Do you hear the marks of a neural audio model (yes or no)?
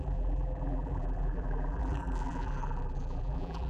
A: yes